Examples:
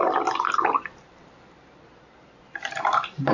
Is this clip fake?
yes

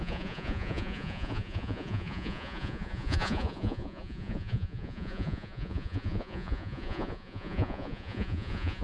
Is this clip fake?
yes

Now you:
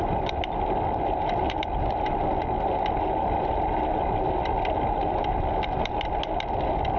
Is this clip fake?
no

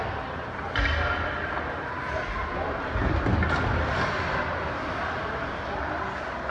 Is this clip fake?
no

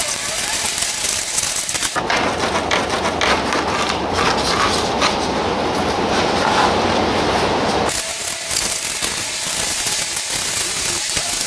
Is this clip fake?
no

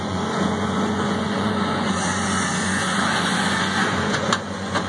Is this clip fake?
yes